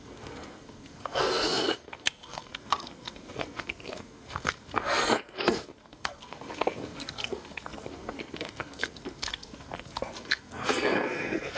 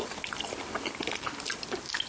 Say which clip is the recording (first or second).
second